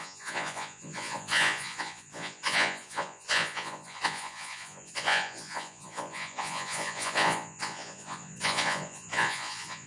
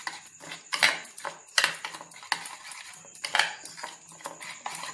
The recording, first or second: second